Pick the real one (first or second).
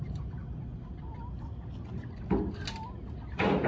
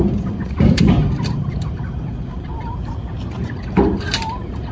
first